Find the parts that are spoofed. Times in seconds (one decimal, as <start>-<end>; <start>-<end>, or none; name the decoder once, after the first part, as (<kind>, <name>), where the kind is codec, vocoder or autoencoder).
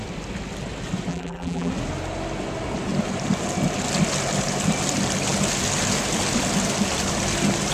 1.1-1.7 (vocoder, BigVGAN v2)